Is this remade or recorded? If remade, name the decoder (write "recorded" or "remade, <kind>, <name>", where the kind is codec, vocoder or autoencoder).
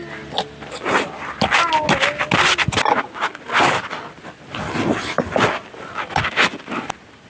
recorded